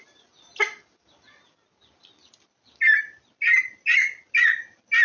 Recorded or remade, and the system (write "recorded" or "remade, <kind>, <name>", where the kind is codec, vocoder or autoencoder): recorded